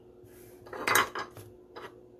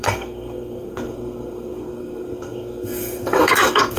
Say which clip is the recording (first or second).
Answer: first